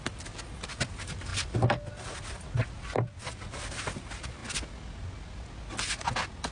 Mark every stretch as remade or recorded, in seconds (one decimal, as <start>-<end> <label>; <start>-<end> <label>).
0.0-6.5 recorded